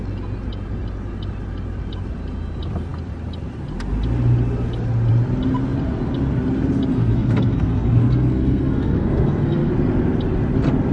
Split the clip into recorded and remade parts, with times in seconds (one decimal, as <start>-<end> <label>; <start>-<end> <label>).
0.0-6.9 recorded; 6.9-9.7 remade; 9.7-10.9 recorded